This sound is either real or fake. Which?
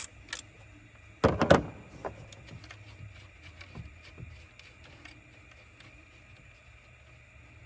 real